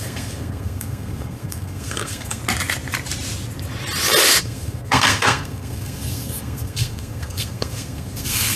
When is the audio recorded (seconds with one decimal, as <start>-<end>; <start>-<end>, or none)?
2.4-4.4